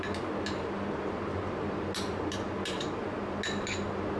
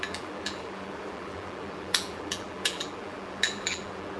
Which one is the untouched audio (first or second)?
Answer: first